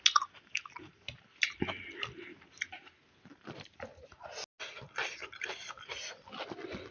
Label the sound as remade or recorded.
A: recorded